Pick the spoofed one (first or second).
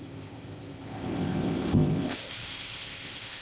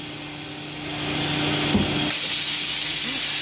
first